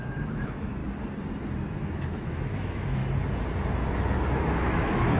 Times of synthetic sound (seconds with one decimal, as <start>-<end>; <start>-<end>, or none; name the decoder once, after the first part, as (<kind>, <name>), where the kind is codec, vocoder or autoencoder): 0.0-0.8 (autoencoder, DAC-VAE); 1.8-3.0; 4.4-5.2